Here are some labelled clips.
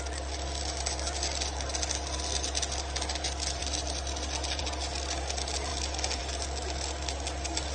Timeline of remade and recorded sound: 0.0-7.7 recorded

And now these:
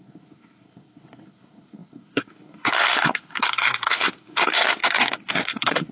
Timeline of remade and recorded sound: 0.0-5.9 remade

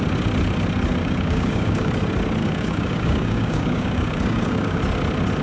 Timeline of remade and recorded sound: 0.0-1.0 recorded; 1.0-1.9 remade; 1.9-2.4 recorded; 2.4-4.8 remade; 4.8-5.4 recorded

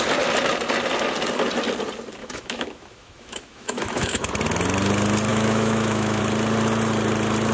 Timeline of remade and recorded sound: 0.0-2.2 recorded; 2.2-4.3 remade; 4.3-5.3 recorded; 5.3-6.2 remade; 6.2-7.5 recorded

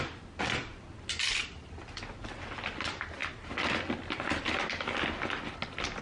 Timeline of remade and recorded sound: 0.0-6.0 recorded